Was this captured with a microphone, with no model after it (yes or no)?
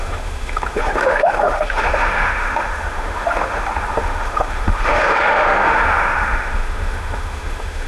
no